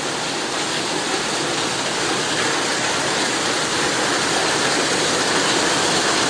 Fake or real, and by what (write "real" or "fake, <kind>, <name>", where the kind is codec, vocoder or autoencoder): real